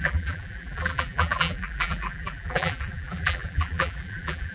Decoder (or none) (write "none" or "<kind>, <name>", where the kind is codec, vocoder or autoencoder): vocoder, BigVGAN v2